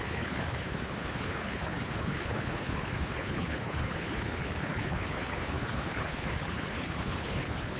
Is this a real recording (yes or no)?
no